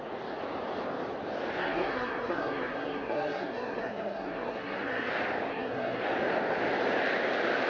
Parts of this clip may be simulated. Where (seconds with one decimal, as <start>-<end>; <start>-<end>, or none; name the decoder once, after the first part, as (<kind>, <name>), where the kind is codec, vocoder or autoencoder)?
1.6-5.1 (codec, SNAC); 5.5-6.0